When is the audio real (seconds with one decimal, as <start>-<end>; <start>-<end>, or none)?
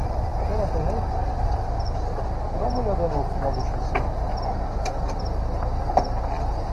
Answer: 0.0-6.7